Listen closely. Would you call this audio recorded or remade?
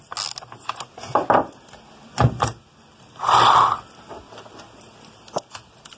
recorded